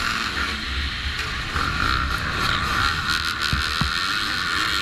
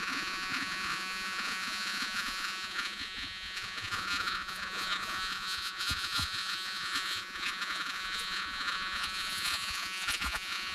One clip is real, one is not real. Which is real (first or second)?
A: first